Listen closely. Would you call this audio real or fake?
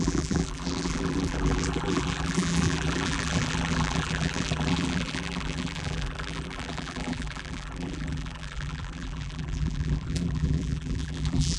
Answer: fake